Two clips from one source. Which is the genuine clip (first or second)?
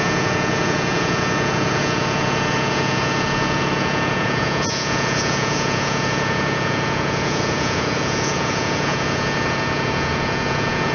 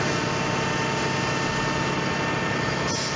second